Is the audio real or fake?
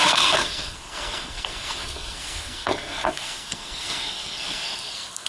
fake